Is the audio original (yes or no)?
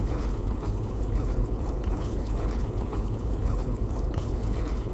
no